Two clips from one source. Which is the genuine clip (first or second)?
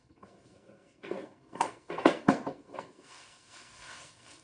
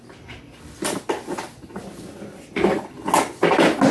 second